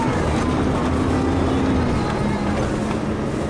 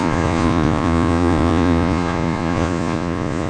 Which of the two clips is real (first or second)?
first